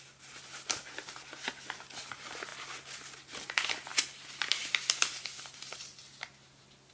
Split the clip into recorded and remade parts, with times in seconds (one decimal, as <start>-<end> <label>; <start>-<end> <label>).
0.0-6.9 recorded